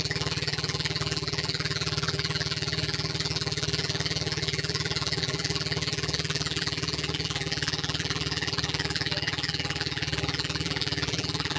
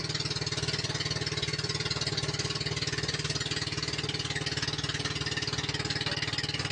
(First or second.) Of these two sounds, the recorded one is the second